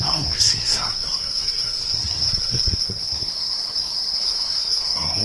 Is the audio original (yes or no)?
no